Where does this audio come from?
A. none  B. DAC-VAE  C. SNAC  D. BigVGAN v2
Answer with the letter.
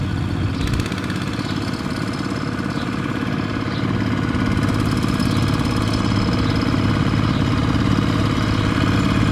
A